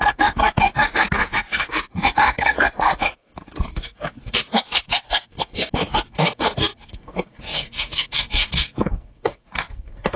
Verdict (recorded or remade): remade